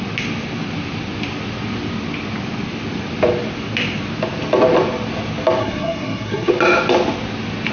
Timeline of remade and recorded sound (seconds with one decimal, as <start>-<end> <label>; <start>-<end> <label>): 0.0-5.6 recorded; 5.6-6.5 remade; 6.5-7.7 recorded